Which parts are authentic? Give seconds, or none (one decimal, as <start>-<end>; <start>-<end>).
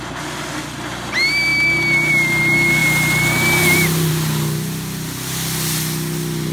0.0-6.5